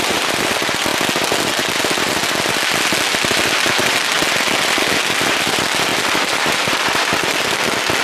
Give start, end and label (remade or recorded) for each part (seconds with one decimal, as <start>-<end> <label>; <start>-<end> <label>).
0.0-0.9 remade; 0.9-1.8 recorded; 1.8-2.2 remade; 2.2-5.0 recorded; 5.0-8.0 remade

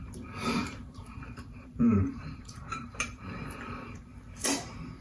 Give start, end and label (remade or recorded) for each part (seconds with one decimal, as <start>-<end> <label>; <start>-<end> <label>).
0.0-4.1 remade; 4.1-5.0 recorded

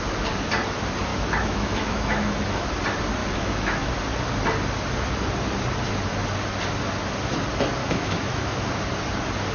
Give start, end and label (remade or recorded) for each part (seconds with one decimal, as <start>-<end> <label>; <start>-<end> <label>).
0.0-1.1 recorded; 1.1-2.7 remade; 2.7-3.2 recorded; 3.2-3.9 remade; 3.9-7.8 recorded; 7.8-8.7 remade; 8.7-9.5 recorded

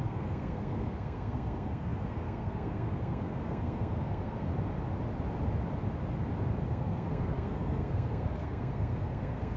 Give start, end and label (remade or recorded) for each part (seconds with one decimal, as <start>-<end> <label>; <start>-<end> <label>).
0.0-4.5 remade; 4.5-6.7 recorded; 6.7-9.6 remade

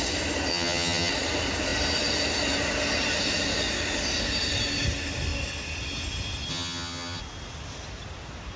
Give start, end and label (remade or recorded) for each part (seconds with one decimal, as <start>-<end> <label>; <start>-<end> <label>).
0.0-0.5 recorded; 0.5-1.1 remade; 1.1-6.5 recorded; 6.5-7.2 remade; 7.2-8.6 recorded

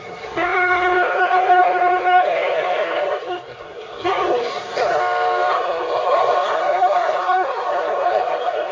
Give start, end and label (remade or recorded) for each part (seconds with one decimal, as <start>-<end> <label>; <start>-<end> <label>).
0.0-5.0 remade; 5.0-5.5 recorded; 5.5-8.7 remade

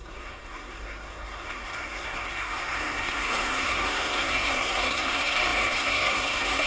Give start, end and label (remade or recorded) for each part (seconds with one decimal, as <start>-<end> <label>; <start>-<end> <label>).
0.0-6.7 remade